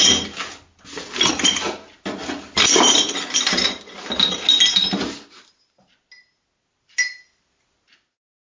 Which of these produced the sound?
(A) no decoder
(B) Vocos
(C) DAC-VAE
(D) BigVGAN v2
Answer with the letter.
A